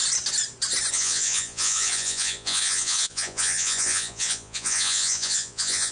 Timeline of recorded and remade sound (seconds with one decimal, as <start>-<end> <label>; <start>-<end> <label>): 0.0-0.9 recorded; 0.9-5.9 remade